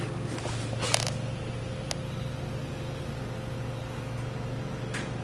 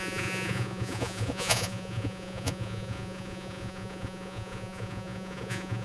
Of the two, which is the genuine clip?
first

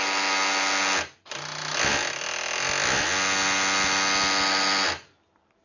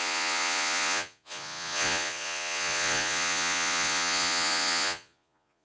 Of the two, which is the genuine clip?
first